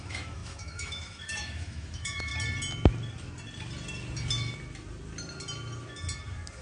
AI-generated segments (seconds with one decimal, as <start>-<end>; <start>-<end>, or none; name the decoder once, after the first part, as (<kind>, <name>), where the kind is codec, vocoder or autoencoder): 0.0-2.3 (autoencoder, DAC-VAE)